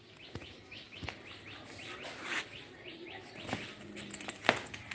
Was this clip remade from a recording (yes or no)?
no